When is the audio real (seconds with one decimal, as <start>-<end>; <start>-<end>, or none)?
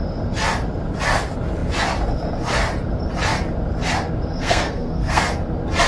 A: 0.0-4.4; 5.2-5.9